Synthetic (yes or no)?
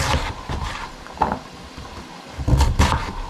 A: no